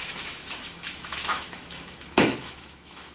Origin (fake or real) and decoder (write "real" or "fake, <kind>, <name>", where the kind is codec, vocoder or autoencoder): fake, autoencoder, DAC-VAE